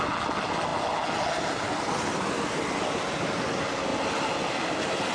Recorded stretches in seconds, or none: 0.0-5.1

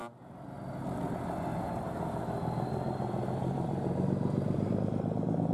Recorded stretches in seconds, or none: 0.0-1.5; 4.8-5.5

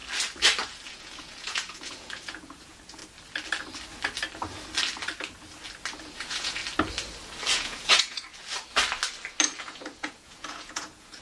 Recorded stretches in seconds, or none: 0.0-0.9; 3.0-6.0; 6.6-7.5; 8.3-9.6

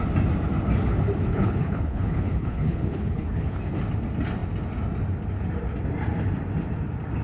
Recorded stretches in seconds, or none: 0.0-1.3; 3.6-7.2

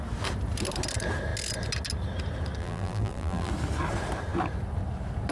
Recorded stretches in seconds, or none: 0.0-2.6; 3.5-5.3

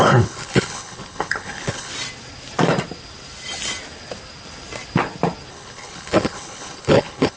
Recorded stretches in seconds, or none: 1.9-5.5

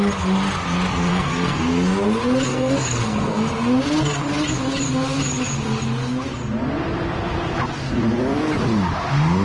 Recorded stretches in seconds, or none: 0.0-1.1; 1.6-2.5; 3.5-9.4

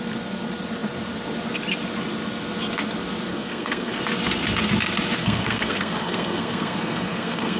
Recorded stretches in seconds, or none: 0.0-3.3; 4.0-5.2